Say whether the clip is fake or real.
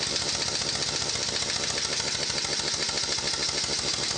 real